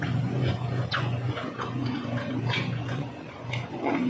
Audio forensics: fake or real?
fake